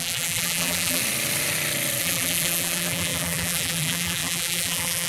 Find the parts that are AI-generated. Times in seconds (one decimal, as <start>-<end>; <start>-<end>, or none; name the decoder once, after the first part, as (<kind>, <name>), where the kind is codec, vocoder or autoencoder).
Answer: 0.0-1.0 (vocoder, BigVGAN v2); 2.0-5.1